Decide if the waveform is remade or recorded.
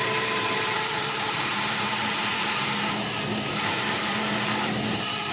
remade